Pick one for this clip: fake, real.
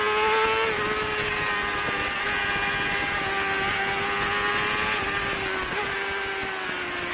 real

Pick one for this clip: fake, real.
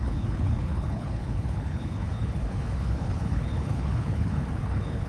fake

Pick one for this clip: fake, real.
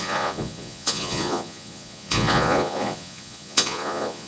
fake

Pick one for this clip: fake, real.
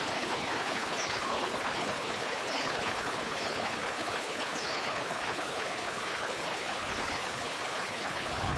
fake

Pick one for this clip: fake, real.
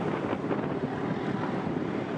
real